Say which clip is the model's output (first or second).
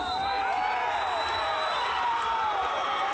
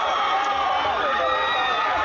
first